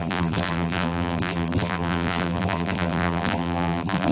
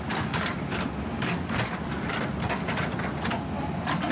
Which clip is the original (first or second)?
second